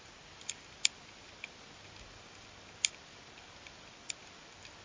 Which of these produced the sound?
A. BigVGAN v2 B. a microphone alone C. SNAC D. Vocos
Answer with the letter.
B